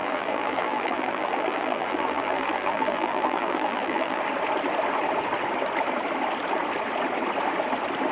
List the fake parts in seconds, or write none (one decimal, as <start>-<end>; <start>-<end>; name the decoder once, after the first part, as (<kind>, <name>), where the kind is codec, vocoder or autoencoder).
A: 0.0-4.2 (vocoder, BigVGAN v2)